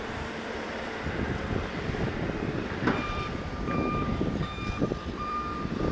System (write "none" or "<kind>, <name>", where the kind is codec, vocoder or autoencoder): vocoder, BigVGAN v2